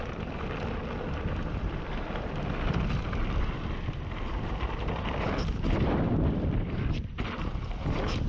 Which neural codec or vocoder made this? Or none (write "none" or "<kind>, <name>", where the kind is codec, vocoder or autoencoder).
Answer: vocoder, BigVGAN v2